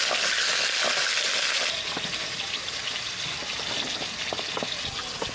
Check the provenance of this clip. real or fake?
real